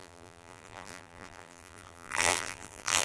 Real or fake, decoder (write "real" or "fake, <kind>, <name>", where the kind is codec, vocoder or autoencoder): fake, vocoder, BigVGAN v2